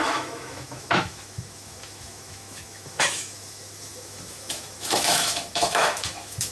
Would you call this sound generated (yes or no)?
yes